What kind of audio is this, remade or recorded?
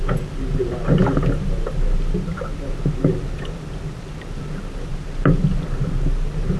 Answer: recorded